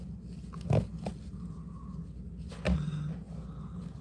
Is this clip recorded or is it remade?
recorded